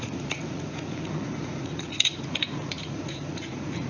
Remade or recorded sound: remade